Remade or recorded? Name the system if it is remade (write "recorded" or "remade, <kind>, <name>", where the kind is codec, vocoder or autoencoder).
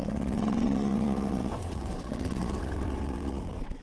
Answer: remade, vocoder, WaveNeXt